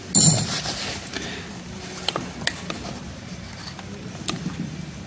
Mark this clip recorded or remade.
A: recorded